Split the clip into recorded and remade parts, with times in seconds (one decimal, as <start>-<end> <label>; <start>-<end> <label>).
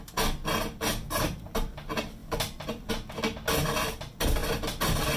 0.0-2.2 recorded; 2.2-2.9 remade; 2.9-4.4 recorded; 4.4-5.2 remade